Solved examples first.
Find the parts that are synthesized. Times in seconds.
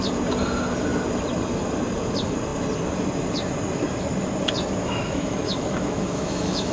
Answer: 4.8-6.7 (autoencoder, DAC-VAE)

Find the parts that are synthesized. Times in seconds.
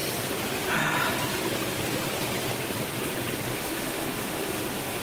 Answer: 3.5-5.0 (autoencoder, DAC-VAE)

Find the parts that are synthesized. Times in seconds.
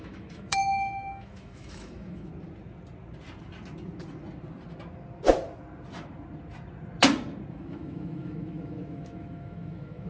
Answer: 0.0-2.3 (autoencoder, DAC-VAE); 7.5-10.1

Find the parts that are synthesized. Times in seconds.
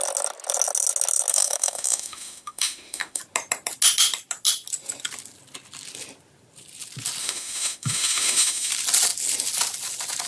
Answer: 1.3-3.2 (autoencoder, DAC-VAE); 7.2-8.7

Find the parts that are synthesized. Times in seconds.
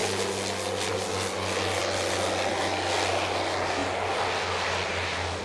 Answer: none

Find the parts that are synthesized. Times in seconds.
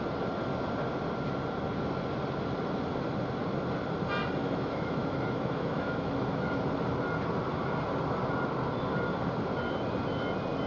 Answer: 4.4-6.6 (autoencoder, DAC-VAE)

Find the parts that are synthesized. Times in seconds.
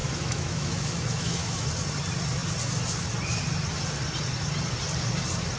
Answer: 0.0-1.7 (autoencoder, DAC-VAE)